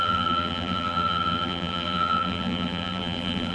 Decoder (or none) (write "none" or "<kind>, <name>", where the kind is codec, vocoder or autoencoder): vocoder, BigVGAN v2